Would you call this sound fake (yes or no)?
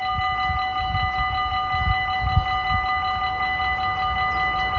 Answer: no